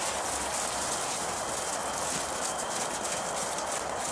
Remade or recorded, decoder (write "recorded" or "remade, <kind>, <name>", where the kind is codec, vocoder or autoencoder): recorded